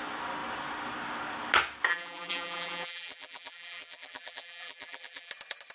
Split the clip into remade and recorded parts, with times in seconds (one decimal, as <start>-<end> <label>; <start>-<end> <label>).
0.0-1.9 recorded; 1.9-5.3 remade; 5.3-5.7 recorded